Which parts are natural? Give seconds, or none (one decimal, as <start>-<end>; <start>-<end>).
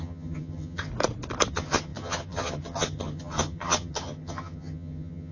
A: 0.9-1.5